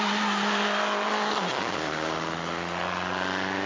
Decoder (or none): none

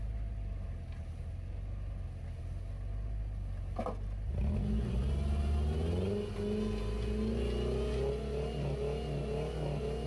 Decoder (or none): none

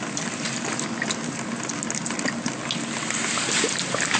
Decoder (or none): none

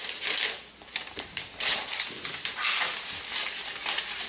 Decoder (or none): none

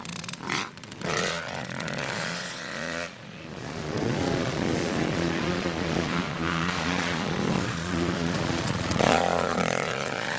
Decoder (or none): vocoder, Vocos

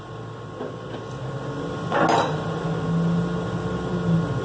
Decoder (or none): none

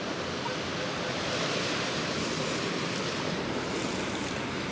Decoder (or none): none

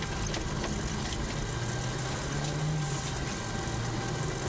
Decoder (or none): none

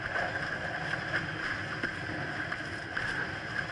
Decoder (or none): none